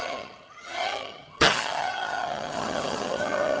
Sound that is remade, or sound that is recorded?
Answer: remade